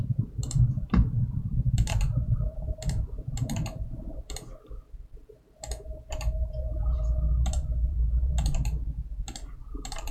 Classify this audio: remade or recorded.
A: remade